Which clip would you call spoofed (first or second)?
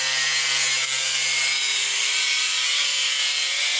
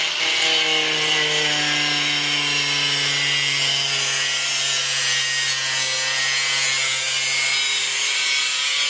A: first